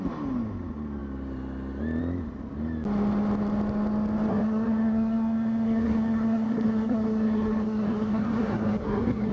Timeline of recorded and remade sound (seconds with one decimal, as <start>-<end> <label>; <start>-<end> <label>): 0.0-4.3 recorded; 4.3-9.3 remade